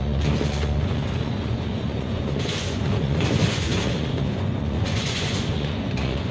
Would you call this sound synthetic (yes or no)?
yes